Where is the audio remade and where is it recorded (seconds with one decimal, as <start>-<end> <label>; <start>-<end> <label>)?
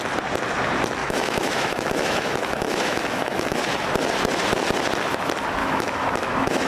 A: 0.0-1.0 recorded; 1.0-3.6 remade; 3.6-5.6 recorded; 5.6-6.7 remade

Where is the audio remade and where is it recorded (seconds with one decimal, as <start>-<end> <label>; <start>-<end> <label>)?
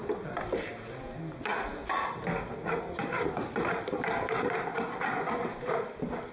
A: 0.0-6.3 recorded